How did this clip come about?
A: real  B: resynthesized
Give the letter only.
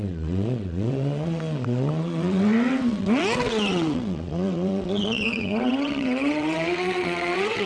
B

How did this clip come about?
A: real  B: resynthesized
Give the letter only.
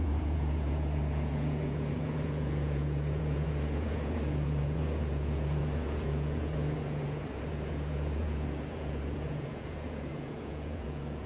B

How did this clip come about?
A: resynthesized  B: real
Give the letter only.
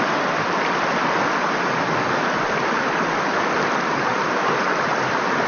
B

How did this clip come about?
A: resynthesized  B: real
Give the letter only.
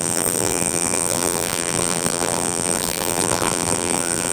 A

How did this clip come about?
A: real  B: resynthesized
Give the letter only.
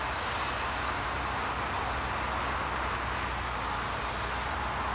A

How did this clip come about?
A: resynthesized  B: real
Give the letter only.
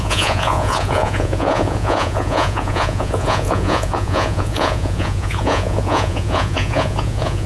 A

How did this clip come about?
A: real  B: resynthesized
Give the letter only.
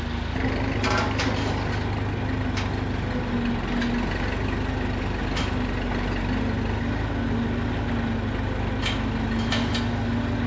A